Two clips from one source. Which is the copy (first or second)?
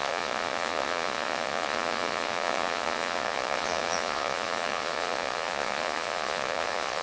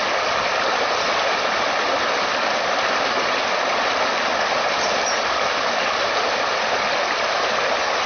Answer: first